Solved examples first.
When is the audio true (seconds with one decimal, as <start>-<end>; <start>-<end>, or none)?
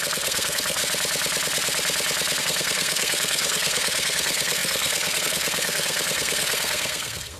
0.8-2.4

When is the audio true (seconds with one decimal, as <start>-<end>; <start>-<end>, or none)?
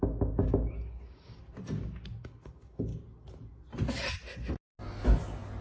1.4-2.2; 2.9-5.6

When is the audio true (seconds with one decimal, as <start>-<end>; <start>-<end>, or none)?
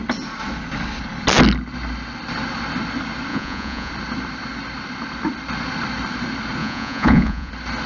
0.0-3.3; 3.9-6.6; 7.5-7.9